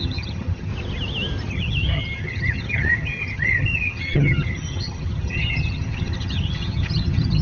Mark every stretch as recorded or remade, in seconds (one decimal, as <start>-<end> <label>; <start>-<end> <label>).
0.0-0.7 remade; 0.7-1.5 recorded; 1.5-7.4 remade